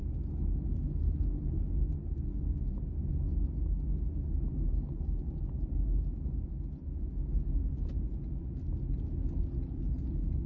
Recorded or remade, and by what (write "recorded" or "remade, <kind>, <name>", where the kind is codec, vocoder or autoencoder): recorded